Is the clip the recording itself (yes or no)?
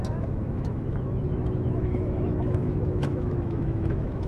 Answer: no